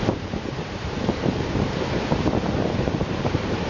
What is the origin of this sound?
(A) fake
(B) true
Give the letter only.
A